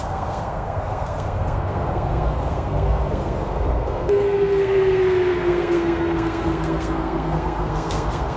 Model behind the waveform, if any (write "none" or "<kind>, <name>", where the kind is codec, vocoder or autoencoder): codec, SNAC